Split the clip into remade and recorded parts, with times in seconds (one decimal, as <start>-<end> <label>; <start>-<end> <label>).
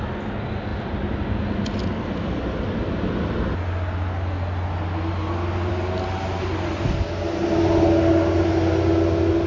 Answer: 0.0-9.5 recorded